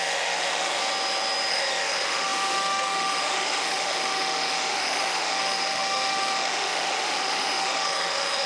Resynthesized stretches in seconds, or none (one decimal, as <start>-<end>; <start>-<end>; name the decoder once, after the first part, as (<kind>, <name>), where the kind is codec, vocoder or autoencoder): 0.0-0.8 (autoencoder, DAC-VAE); 1.5-8.5